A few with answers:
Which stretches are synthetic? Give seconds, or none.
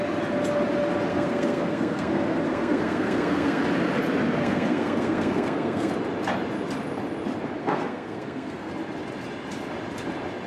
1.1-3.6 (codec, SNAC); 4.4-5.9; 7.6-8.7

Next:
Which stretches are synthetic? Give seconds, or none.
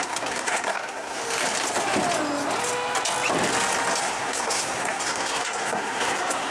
0.0-1.2 (codec, SNAC); 4.0-6.5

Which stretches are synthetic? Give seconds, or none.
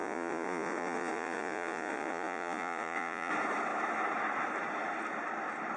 0.0-3.3 (vocoder, Vocos)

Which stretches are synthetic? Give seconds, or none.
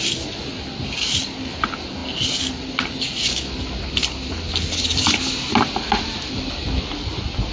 none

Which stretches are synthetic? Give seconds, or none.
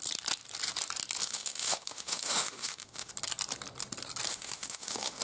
1.2-3.1 (autoencoder, DAC-VAE); 4.3-5.2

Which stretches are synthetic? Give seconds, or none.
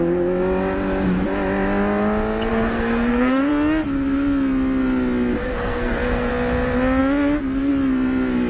2.5-3.5 (codec, SNAC); 5.4-6.3